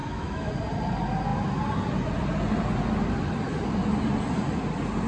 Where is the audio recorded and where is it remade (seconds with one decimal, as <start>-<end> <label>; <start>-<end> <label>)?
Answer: 0.0-0.5 remade; 0.5-5.1 recorded

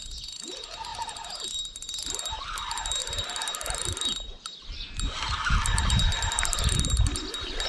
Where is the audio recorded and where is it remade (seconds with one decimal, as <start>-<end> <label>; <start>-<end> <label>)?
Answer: 0.0-7.7 recorded

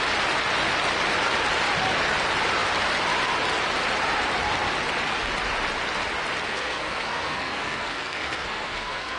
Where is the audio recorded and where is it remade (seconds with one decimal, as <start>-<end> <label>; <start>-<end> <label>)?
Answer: 0.0-6.5 recorded; 6.5-9.2 remade

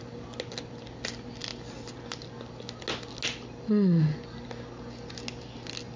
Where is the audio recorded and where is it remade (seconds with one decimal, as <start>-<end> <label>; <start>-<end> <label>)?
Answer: 0.0-6.0 recorded

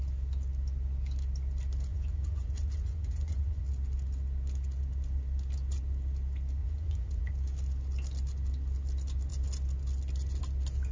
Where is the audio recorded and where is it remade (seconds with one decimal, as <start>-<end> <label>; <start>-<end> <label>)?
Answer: 0.0-1.9 recorded; 1.9-3.6 remade; 3.6-6.6 recorded; 6.6-7.3 remade; 7.3-10.9 recorded

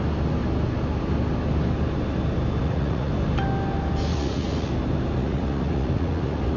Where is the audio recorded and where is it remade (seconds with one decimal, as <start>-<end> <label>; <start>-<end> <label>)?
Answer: 0.0-2.6 recorded; 2.6-3.1 remade; 3.1-4.1 recorded; 4.1-4.7 remade; 4.7-5.2 recorded; 5.2-6.6 remade

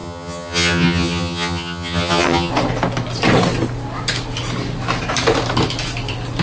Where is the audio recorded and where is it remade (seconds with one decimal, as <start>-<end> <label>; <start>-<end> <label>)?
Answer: 0.0-2.5 remade; 2.5-6.4 recorded

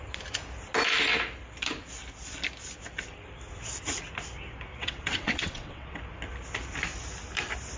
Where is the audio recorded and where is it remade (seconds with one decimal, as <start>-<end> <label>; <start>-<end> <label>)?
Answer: 0.0-4.7 recorded; 4.7-6.0 remade; 6.0-7.8 recorded